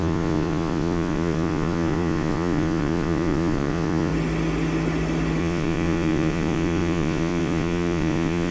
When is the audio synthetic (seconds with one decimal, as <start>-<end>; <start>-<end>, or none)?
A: 0.0-4.1; 5.4-8.5

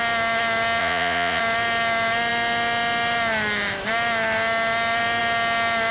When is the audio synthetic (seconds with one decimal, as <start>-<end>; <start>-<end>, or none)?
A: 0.8-1.4

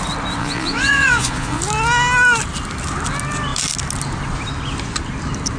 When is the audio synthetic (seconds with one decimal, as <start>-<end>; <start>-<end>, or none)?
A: 0.4-1.6

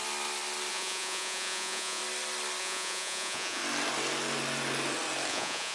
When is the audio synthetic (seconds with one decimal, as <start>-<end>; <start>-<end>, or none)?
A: 0.7-2.0; 2.6-3.6; 5.3-5.7

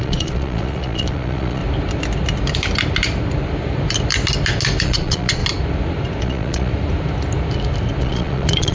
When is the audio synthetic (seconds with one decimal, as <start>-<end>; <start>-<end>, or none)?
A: 0.0-1.6; 4.8-5.4; 6.2-6.7; 8.0-8.7